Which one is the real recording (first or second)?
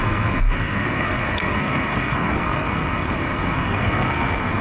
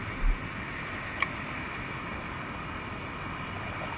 second